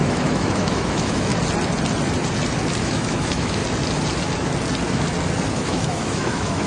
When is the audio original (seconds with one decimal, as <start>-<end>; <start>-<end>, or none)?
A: 1.3-2.8; 3.6-5.5